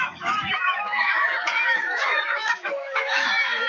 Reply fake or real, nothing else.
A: fake